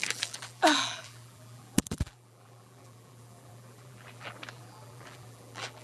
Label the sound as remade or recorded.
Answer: remade